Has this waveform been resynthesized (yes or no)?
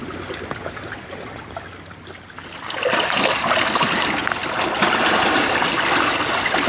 no